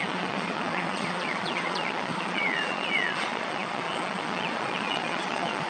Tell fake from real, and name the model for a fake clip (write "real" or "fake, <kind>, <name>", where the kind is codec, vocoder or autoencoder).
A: fake, vocoder, Vocos